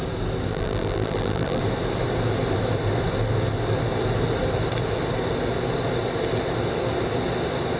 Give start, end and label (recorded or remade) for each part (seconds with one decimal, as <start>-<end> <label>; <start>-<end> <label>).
0.0-0.5 recorded; 0.5-1.6 remade; 1.6-7.8 recorded